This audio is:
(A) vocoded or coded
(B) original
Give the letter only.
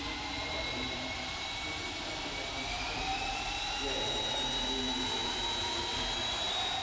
B